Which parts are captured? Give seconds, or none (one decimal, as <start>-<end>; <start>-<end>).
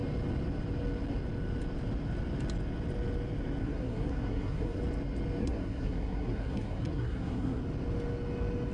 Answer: 0.0-3.6; 4.8-5.4; 7.6-8.7